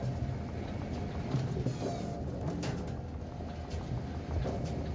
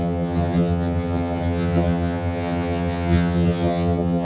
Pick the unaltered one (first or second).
first